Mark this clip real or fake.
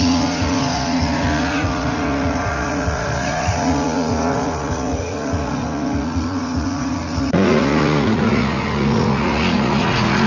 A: fake